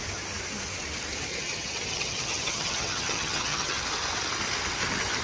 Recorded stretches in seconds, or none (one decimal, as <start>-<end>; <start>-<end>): 0.0-1.3; 3.8-5.2